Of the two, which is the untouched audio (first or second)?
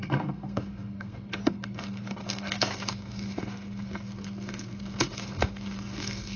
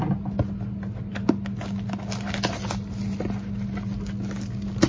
second